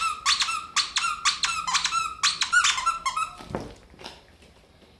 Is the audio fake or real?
real